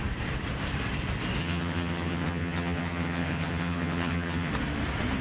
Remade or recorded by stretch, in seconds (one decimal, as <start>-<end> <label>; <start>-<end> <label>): 0.0-1.4 recorded; 1.4-4.5 remade; 4.5-5.2 recorded